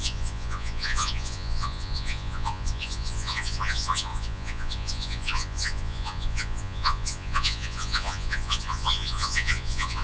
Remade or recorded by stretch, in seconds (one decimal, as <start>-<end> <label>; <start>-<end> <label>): 0.0-10.0 remade